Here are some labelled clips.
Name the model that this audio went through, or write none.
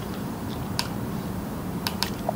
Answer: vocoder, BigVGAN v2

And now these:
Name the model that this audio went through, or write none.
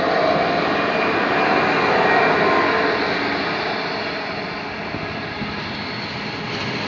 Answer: none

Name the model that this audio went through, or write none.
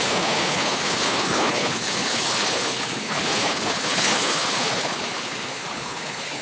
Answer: codec, HILCodec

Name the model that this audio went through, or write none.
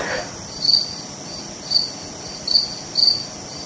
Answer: none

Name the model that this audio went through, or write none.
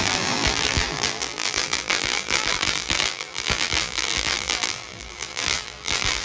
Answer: vocoder, BigVGAN v2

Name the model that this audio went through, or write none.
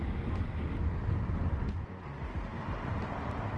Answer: none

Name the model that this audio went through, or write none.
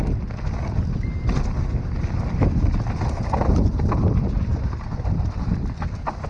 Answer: none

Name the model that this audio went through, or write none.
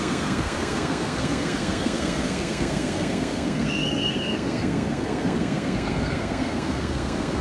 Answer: codec, SNAC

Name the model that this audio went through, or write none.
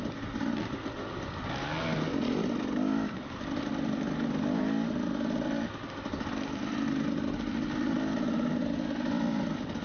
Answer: none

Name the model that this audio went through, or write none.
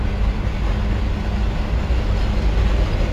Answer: none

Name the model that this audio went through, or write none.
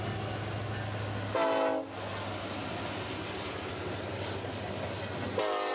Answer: none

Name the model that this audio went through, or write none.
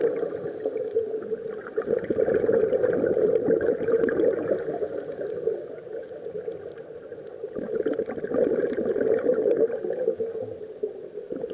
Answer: none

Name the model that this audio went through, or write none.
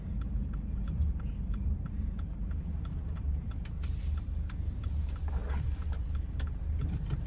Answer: vocoder, BigVGAN v2